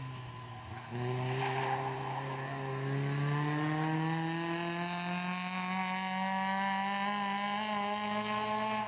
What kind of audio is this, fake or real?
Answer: real